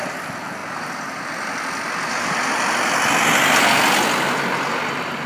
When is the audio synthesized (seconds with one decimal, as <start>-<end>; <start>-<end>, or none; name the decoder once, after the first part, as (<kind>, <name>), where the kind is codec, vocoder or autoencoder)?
none